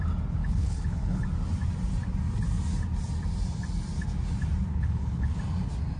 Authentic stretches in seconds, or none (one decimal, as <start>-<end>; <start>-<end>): 0.0-0.4; 1.2-4.7; 5.4-6.0